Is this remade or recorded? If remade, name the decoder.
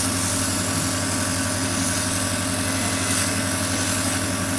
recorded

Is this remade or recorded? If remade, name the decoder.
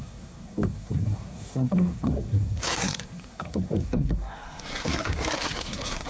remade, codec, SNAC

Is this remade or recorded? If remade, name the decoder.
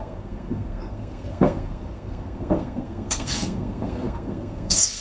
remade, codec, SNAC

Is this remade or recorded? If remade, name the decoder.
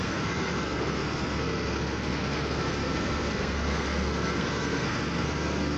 remade, codec, SNAC